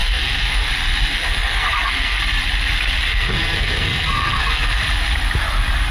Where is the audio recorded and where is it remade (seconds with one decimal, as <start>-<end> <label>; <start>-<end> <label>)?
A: 0.0-0.7 remade; 0.7-1.1 recorded; 1.1-2.2 remade; 2.2-3.1 recorded; 3.1-4.8 remade; 4.8-5.9 recorded